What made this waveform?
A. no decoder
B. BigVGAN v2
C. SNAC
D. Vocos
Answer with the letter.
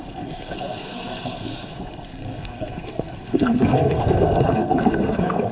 C